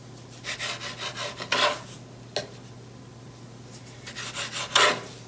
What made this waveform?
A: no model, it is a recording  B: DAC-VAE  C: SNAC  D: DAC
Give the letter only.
A